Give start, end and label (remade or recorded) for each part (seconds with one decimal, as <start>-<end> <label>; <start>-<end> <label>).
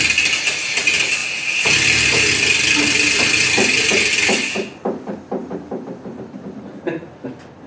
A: 0.0-1.2 recorded; 1.2-2.9 remade; 2.9-5.4 recorded; 5.4-6.6 remade; 6.6-7.7 recorded